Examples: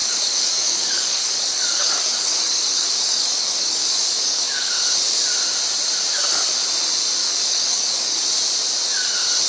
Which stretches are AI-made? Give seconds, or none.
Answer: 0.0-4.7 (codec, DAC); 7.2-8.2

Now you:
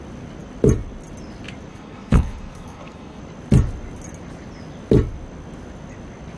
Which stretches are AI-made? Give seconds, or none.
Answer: 1.7-3.2 (codec, SNAC)

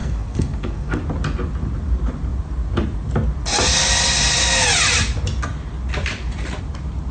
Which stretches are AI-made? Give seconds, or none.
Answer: 0.0-1.0 (codec, SNAC)

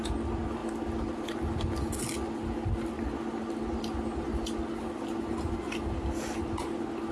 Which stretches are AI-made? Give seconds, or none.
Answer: none

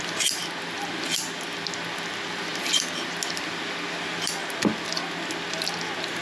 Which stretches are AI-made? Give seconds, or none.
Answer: none

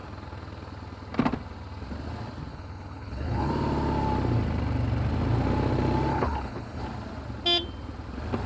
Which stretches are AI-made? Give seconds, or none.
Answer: 2.5-3.5 (codec, HILCodec); 6.1-6.8

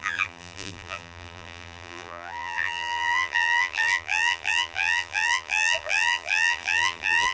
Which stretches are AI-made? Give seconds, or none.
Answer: 0.0-7.3 (vocoder, BigVGAN v2)

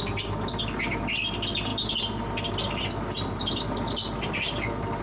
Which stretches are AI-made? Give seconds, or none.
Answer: none